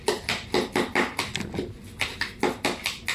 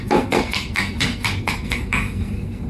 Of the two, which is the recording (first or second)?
first